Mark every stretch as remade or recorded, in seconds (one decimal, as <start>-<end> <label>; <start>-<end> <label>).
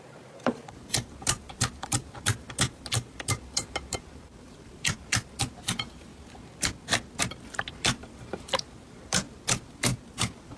0.0-6.1 remade; 6.1-7.7 recorded; 7.7-10.6 remade